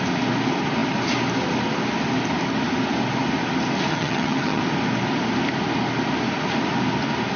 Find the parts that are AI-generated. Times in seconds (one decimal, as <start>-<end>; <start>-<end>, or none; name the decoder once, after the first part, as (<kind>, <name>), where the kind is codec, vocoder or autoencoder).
3.9-4.6 (vocoder, HiFi-GAN)